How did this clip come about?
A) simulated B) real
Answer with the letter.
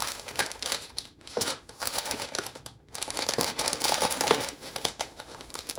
A